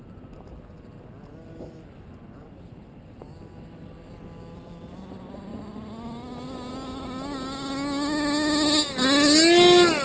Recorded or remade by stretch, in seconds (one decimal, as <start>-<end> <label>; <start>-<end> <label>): 0.0-10.0 recorded